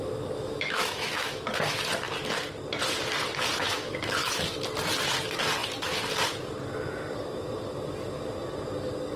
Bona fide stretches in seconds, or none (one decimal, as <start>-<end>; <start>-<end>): 1.8-3.6; 4.5-9.2